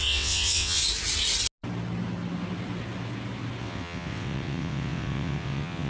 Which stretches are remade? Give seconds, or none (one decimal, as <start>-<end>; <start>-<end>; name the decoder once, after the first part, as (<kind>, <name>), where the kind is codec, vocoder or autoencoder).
0.0-0.8 (vocoder, WaveNeXt); 3.6-5.9